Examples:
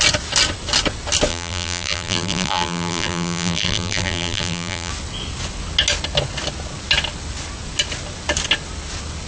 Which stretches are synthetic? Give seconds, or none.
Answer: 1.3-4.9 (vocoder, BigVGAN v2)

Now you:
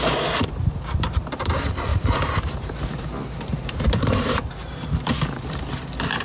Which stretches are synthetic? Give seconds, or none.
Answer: 1.9-5.6 (vocoder, BigVGAN v2)

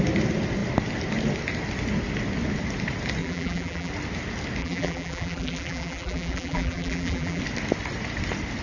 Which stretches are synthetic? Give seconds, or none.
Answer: 3.2-3.9 (vocoder, BigVGAN v2); 4.6-7.4

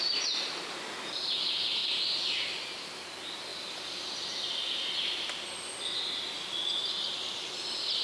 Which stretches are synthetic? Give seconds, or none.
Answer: 1.8-2.5 (vocoder, BigVGAN v2)

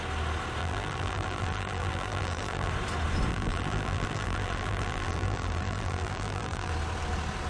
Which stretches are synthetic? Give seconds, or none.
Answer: 0.6-2.7 (vocoder, BigVGAN v2); 3.3-6.7

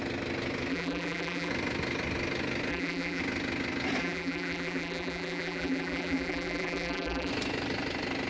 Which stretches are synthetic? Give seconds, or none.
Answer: 0.7-1.5 (vocoder, BigVGAN v2); 2.7-3.2; 4.0-7.3

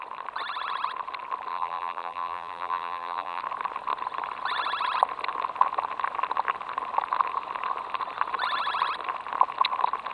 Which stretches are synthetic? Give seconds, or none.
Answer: 1.5-3.4 (vocoder, BigVGAN v2)